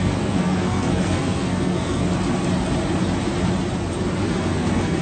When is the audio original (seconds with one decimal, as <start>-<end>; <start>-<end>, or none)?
2.1-4.2